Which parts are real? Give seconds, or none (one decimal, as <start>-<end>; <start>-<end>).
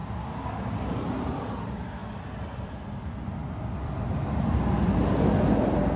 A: 0.0-6.0